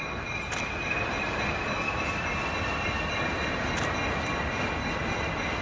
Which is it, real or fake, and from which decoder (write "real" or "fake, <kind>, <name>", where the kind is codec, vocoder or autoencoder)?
real